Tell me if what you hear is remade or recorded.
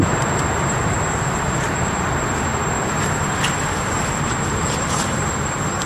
remade